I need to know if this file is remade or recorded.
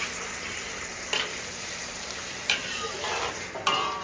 remade